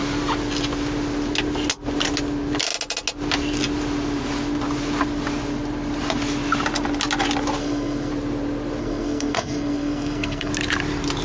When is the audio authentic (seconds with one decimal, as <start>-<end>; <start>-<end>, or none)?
0.0-7.6; 8.1-8.8; 10.5-11.2

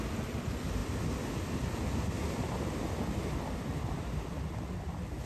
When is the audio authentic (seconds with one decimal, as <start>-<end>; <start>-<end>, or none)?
0.0-5.3

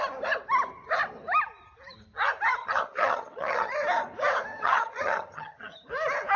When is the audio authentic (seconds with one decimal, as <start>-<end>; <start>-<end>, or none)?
0.0-2.6; 3.7-4.5; 5.9-6.4

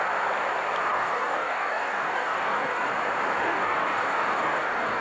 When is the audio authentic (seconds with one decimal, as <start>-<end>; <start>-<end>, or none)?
0.0-0.9; 2.9-3.4

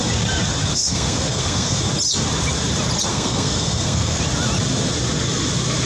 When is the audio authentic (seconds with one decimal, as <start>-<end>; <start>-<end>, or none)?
0.0-0.7; 1.8-3.1; 4.2-5.9

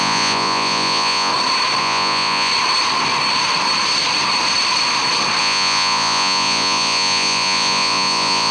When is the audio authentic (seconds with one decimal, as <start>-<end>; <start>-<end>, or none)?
1.3-1.8; 2.5-5.4

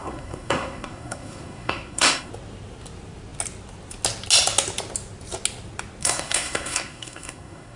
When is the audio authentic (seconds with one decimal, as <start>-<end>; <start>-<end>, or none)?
2.3-6.0

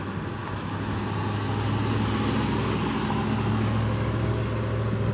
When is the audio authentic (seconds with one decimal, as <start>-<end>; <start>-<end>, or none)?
0.0-5.1